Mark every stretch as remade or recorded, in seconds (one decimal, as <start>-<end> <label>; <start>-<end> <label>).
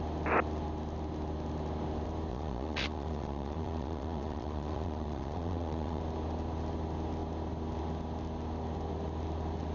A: 0.0-2.3 recorded; 2.3-6.0 remade; 6.0-9.7 recorded